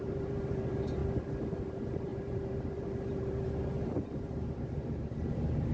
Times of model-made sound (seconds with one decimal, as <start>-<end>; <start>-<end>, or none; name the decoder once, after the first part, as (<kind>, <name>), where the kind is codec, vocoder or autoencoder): 0.0-1.0 (vocoder, BigVGAN v2); 1.6-5.7